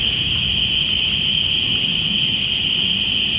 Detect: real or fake real